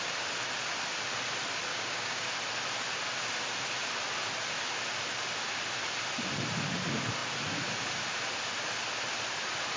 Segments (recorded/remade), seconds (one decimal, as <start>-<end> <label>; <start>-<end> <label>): 0.0-1.7 recorded; 1.7-2.3 remade; 2.3-9.8 recorded